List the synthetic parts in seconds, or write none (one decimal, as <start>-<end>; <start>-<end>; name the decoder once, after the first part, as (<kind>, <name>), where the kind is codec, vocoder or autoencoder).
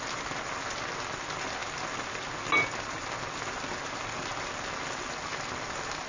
none